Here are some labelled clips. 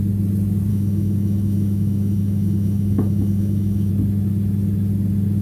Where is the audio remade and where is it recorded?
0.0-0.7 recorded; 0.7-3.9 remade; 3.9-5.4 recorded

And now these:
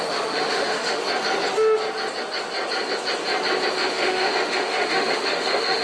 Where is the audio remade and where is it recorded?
0.0-1.0 remade; 1.0-3.7 recorded; 3.7-5.8 remade